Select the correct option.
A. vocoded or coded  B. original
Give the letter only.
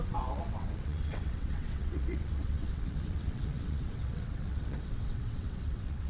A